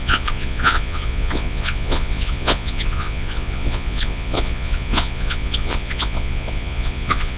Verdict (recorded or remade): remade